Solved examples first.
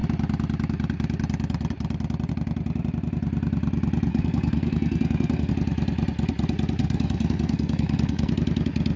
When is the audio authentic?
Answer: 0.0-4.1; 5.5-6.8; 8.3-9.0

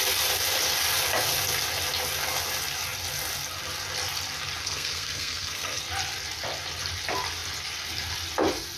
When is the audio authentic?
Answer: 0.0-4.6; 5.8-8.8

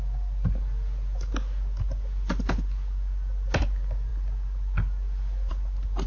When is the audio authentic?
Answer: 0.0-6.1

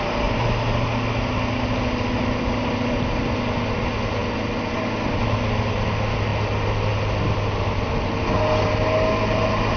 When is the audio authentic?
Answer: 0.0-9.8

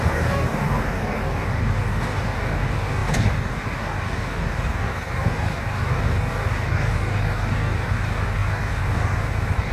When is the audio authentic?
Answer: none